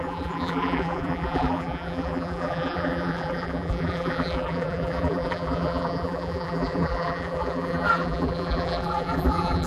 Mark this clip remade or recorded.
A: remade